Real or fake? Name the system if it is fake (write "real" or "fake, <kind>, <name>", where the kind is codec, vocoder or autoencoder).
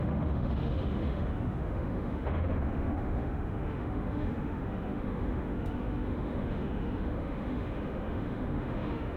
fake, autoencoder, DAC-VAE